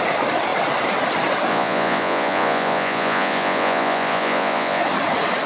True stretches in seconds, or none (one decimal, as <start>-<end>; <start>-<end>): 0.0-1.5; 4.8-5.5